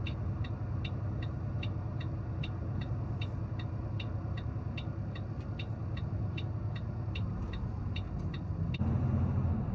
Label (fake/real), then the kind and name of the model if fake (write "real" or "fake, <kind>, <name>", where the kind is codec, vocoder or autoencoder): real